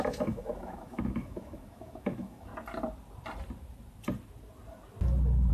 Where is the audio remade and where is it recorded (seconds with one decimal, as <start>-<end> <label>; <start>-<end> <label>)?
0.0-2.5 remade; 2.5-5.5 recorded